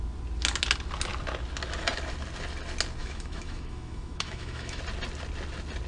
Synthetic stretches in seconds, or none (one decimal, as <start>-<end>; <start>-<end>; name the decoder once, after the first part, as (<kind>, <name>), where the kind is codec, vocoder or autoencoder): 3.0-4.8 (autoencoder, DAC-VAE)